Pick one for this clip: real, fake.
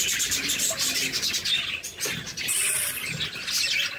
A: real